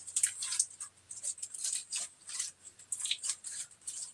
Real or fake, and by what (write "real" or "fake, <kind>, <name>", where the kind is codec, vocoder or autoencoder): real